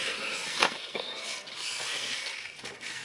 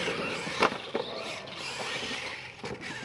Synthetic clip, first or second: first